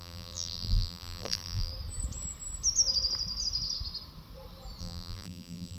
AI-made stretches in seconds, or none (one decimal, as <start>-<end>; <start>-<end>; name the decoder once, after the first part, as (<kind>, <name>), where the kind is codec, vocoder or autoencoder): 0.0-1.7 (vocoder, BigVGAN v2); 4.8-5.8